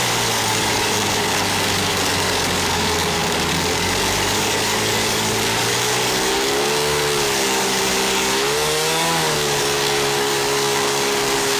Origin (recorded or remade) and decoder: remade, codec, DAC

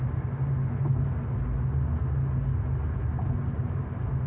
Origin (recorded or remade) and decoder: recorded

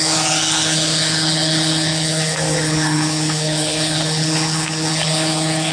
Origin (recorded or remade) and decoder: remade, codec, HILCodec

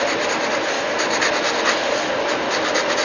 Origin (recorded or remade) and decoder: recorded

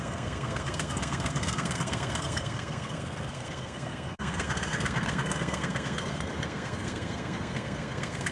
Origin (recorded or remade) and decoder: remade, codec, SNAC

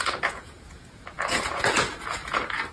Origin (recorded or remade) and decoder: remade, vocoder, Vocos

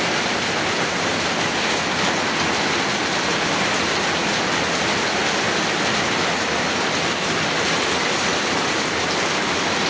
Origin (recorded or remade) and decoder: recorded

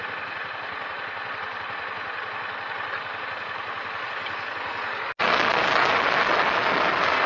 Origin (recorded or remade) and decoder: recorded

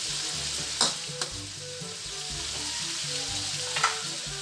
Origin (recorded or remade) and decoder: recorded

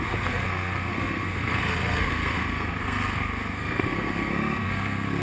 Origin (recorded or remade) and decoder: remade, codec, SNAC